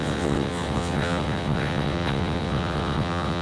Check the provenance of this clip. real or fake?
fake